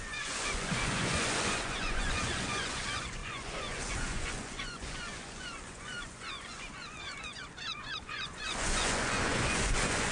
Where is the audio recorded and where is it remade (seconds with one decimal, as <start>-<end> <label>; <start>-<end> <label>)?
0.0-10.1 remade